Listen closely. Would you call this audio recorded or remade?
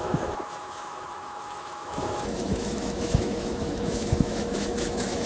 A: remade